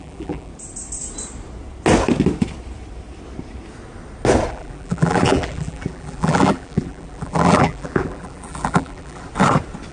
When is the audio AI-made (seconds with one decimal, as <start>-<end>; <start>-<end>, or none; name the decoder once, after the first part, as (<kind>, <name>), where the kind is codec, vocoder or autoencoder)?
0.0-0.5 (vocoder, BigVGAN v2); 4.5-9.2